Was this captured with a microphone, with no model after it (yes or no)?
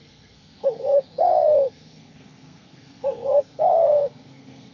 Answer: no